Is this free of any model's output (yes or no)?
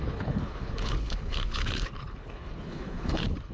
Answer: no